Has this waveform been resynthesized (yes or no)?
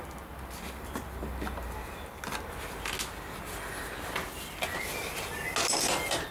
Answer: no